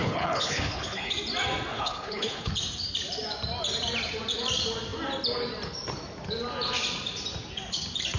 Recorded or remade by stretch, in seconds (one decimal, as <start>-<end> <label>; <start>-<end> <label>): 0.0-1.1 remade; 1.1-1.7 recorded; 1.7-2.5 remade; 2.5-8.2 recorded